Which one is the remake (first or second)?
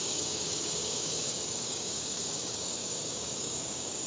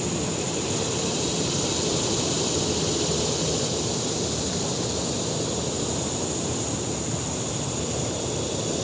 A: first